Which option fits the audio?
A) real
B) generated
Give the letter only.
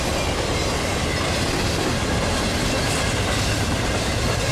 A